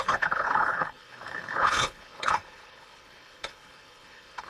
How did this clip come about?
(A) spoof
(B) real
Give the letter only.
A